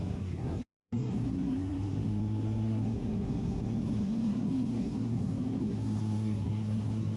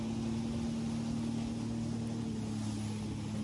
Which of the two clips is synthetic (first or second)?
first